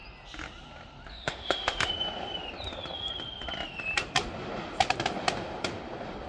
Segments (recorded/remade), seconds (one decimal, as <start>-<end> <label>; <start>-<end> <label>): 0.0-1.1 recorded; 1.1-1.9 remade; 1.9-6.3 recorded